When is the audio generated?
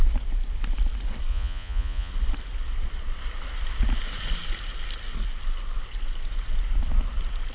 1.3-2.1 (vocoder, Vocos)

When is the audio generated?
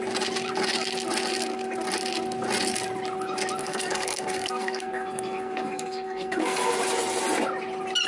3.6-6.7 (codec, SNAC)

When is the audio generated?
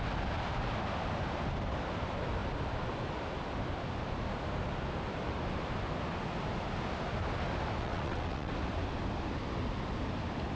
7.8-8.5 (vocoder, WaveNeXt)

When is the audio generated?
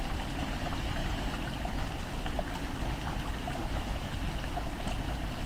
3.6-4.1 (autoencoder, DAC-VAE)